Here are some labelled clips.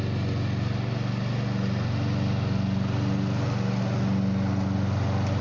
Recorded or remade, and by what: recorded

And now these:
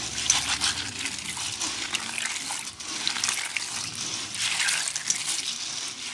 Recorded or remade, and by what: recorded